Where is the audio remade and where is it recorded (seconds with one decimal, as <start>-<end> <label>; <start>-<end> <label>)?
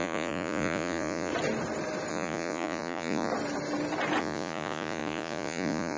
0.0-1.3 remade; 1.3-2.1 recorded; 2.1-3.3 remade; 3.3-4.2 recorded; 4.2-6.0 remade